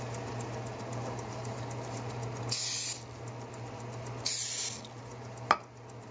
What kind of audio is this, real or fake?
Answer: real